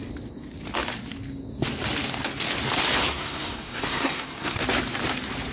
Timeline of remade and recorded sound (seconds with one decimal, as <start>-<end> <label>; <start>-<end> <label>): 0.0-3.0 recorded; 3.0-4.6 remade; 4.6-5.5 recorded